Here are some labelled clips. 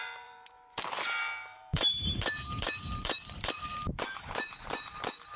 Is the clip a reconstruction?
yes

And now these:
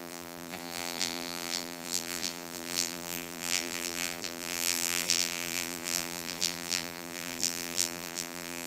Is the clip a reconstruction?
yes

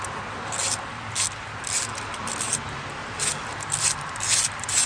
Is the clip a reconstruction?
yes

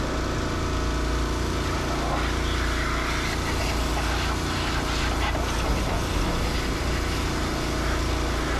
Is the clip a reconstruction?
no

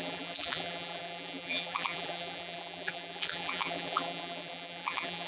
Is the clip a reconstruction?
yes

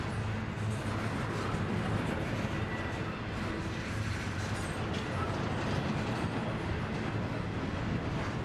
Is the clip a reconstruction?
no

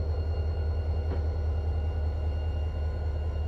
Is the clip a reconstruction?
no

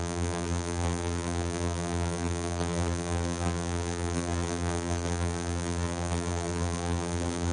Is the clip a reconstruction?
yes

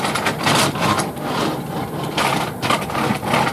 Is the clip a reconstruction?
yes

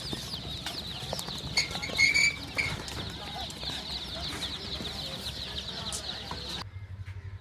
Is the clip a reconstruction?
no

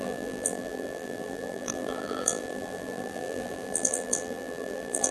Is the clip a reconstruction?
yes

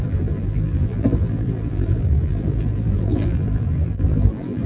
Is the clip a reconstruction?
yes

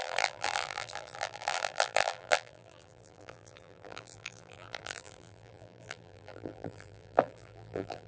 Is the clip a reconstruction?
yes